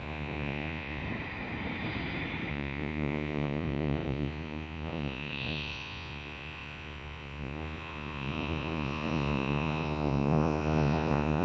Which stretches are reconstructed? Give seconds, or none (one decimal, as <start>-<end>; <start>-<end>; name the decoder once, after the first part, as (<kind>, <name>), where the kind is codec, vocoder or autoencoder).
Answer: 0.0-1.0 (vocoder, Vocos); 2.5-11.4